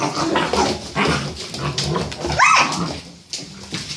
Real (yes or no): yes